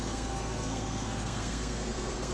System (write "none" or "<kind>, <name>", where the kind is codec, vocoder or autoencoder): codec, SNAC